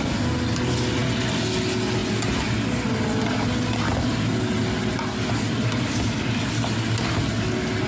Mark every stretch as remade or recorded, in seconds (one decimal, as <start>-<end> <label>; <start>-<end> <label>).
0.0-7.9 recorded